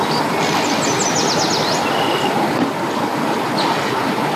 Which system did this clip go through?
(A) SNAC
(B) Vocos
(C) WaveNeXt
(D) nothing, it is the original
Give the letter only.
D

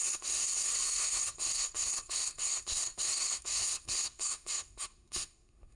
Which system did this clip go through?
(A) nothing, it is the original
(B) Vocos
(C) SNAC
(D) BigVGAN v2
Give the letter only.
C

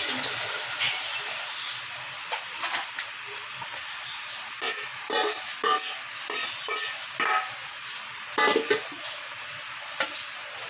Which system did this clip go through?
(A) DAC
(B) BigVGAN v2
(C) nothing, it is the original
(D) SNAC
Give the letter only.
C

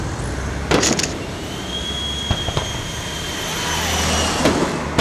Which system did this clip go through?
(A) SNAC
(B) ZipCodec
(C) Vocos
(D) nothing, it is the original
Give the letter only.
D